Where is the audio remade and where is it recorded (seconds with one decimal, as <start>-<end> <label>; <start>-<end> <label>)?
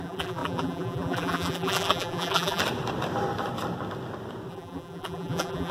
0.0-2.6 remade; 2.6-4.5 recorded; 4.5-5.7 remade